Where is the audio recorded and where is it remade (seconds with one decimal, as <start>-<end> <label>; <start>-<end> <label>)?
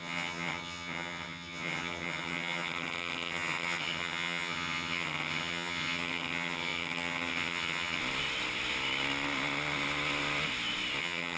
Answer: 0.0-8.0 remade; 8.0-11.0 recorded; 11.0-11.4 remade